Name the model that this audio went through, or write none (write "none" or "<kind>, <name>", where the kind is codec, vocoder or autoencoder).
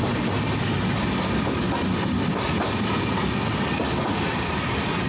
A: none